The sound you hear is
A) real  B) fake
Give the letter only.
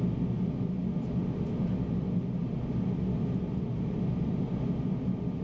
A